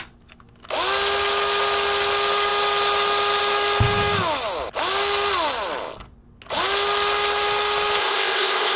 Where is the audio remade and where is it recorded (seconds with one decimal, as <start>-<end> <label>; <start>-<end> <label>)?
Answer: 0.0-8.0 recorded; 8.0-8.8 remade